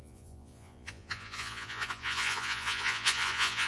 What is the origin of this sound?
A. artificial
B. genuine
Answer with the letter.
A